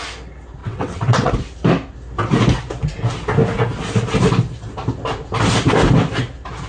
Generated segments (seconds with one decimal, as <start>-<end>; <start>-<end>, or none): 0.6-1.3